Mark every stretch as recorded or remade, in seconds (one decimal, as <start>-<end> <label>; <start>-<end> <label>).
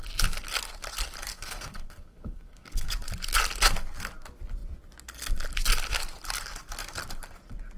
0.0-1.3 recorded; 1.3-2.9 remade; 2.9-7.8 recorded